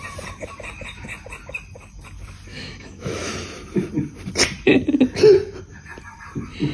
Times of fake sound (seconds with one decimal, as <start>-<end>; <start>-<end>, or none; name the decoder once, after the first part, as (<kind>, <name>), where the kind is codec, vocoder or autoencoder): 2.5-3.3 (autoencoder, DAC-VAE)